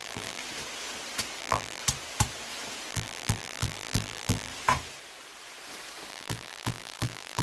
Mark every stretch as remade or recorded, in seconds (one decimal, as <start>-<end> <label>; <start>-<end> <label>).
0.0-0.4 remade; 0.4-1.4 recorded; 1.4-1.8 remade; 1.8-2.9 recorded; 2.9-4.5 remade; 4.5-6.1 recorded; 6.1-7.4 remade